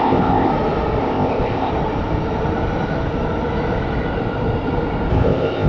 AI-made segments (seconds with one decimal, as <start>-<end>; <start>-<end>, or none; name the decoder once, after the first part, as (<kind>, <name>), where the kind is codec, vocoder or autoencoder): 0.0-0.5 (codec, ZipCodec); 1.0-1.7; 5.1-5.7